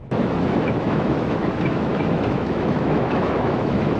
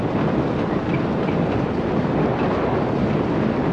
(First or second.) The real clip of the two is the second